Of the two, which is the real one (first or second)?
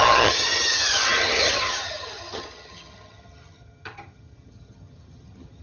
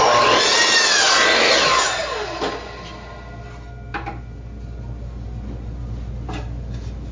second